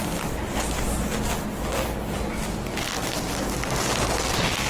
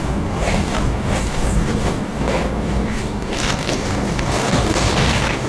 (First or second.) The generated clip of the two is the second